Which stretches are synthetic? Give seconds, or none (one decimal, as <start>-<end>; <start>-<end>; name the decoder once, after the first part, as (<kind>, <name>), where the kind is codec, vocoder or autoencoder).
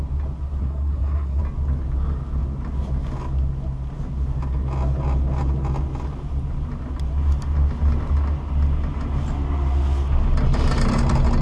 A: 0.6-1.4 (codec, SNAC)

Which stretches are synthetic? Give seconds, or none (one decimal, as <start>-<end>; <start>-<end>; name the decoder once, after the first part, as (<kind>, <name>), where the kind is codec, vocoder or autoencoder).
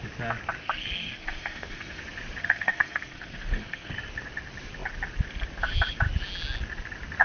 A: 0.6-2.0 (codec, SNAC); 2.4-3.9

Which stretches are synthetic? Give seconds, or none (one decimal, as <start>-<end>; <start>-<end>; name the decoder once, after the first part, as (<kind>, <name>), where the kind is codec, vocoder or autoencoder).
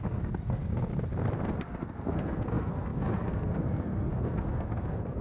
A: 0.0-0.9 (codec, SNAC); 1.6-5.2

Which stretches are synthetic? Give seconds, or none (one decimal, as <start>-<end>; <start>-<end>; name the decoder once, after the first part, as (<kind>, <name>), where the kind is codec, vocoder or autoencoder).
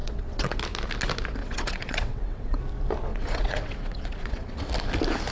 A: 0.0-0.6 (vocoder, WaveNeXt); 1.4-2.6; 3.1-4.7